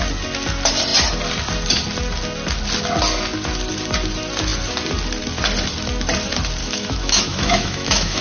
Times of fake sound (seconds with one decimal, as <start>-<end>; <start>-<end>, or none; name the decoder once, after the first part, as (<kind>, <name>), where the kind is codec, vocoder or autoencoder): 6.6-8.2 (autoencoder, DAC-VAE)